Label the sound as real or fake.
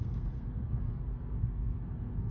fake